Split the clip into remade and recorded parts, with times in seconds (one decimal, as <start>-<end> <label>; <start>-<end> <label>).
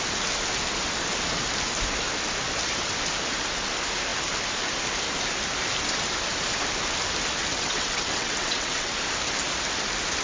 0.0-7.5 recorded; 7.5-8.9 remade; 8.9-10.2 recorded